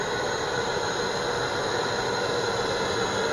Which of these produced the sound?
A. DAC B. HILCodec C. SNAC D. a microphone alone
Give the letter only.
D